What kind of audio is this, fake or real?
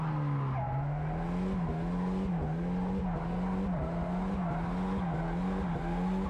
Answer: real